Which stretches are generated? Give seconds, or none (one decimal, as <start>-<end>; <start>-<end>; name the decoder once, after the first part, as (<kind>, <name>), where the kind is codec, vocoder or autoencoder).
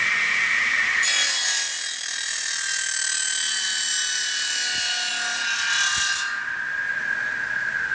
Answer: none